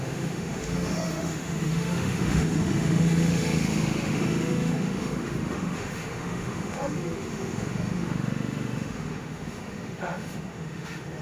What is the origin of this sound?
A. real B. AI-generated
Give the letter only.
B